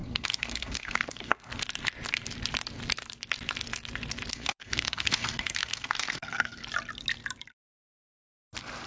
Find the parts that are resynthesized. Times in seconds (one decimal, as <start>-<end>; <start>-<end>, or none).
0.0-1.5; 4.3-6.6